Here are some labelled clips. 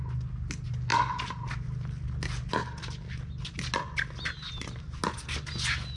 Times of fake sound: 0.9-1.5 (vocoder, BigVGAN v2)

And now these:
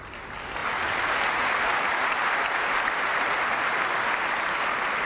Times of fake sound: 0.6-3.6 (vocoder, BigVGAN v2)